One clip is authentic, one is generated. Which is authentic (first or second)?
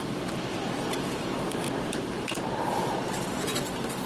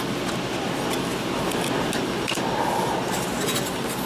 second